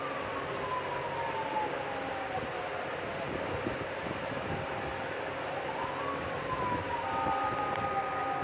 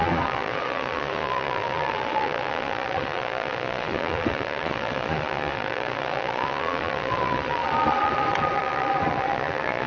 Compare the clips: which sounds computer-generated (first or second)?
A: second